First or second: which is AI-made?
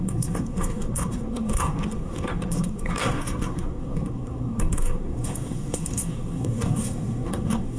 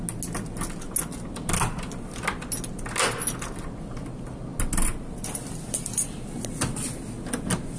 first